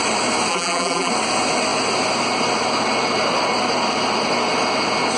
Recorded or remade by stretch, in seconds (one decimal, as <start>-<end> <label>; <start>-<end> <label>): 0.0-0.5 recorded; 0.5-1.1 remade; 1.1-5.2 recorded

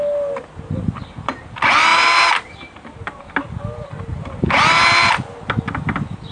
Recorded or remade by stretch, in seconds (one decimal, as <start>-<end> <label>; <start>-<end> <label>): 0.0-6.3 recorded